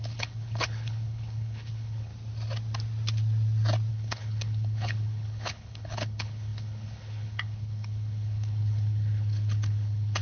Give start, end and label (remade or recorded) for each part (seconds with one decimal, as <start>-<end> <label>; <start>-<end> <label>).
0.0-2.1 remade; 2.1-3.9 recorded; 3.9-10.2 remade